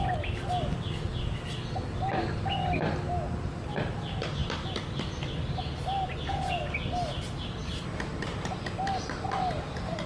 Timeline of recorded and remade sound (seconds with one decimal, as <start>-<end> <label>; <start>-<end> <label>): 0.0-10.1 recorded